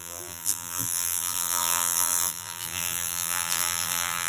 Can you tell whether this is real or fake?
fake